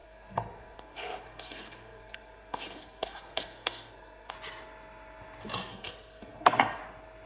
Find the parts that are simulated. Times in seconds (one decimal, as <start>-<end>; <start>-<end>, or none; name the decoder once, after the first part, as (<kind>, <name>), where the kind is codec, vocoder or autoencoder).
0.0-4.3 (codec, SNAC); 5.7-6.8